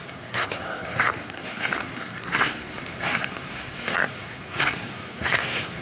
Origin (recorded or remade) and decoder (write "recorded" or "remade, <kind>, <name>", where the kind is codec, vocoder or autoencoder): remade, codec, SNAC